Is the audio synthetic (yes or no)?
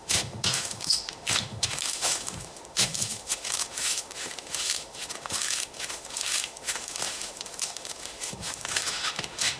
yes